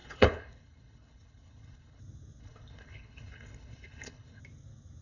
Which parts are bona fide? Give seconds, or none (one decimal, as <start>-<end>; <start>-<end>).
2.0-2.4; 4.4-5.0